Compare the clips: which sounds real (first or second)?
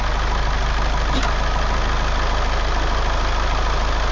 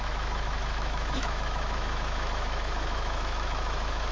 first